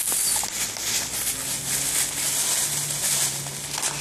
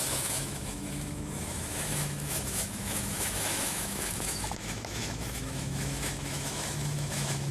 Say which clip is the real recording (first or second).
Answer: first